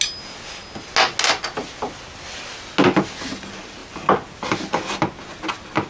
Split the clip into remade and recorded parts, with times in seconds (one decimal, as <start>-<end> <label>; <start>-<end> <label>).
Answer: 0.0-5.9 recorded